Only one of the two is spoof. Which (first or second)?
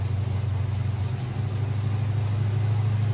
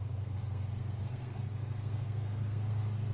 second